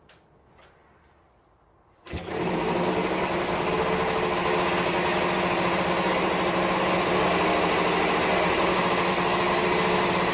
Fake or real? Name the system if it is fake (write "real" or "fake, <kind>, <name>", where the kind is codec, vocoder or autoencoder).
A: real